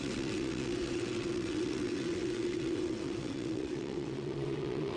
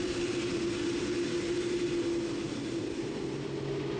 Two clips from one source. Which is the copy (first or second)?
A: first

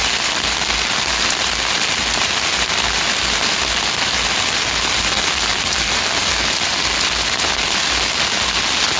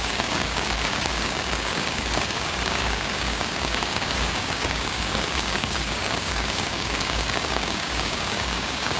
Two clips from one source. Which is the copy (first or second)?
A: second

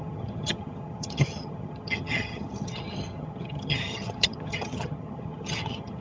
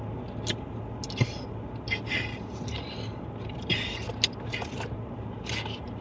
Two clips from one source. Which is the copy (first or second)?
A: first